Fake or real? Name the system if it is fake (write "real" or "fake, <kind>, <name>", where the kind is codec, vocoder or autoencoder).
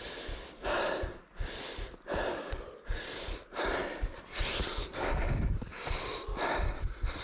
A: fake, vocoder, BigVGAN v2